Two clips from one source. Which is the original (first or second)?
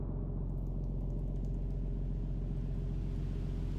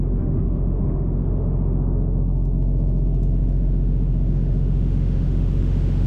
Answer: first